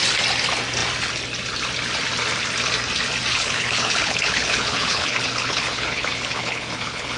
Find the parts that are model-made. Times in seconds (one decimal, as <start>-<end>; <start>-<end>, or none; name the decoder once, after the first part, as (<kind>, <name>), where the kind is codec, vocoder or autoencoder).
3.3-7.2 (codec, HILCodec)